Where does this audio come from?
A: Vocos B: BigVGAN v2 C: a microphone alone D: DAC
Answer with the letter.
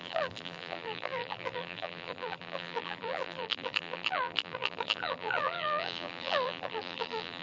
B